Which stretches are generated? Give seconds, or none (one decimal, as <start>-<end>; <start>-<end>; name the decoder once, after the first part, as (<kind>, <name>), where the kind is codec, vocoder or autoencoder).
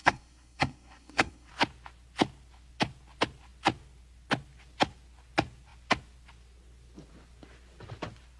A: 0.0-1.5 (codec, SNAC)